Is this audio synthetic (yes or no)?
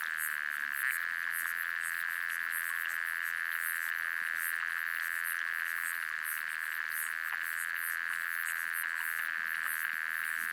no